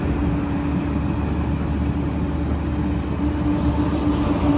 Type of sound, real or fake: real